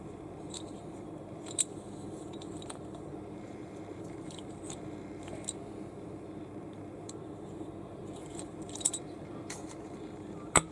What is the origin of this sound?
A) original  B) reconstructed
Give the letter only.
B